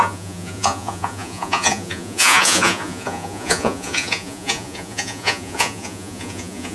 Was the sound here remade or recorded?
remade